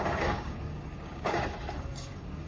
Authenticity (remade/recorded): remade